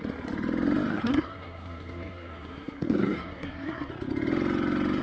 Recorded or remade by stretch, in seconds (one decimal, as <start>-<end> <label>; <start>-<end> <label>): 0.0-0.9 recorded; 0.9-3.9 remade; 3.9-5.0 recorded